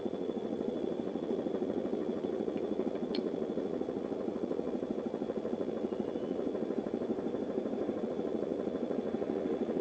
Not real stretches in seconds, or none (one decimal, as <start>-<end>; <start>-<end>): 0.0-7.1; 8.0-9.8